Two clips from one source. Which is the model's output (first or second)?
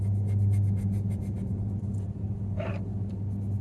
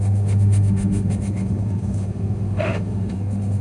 second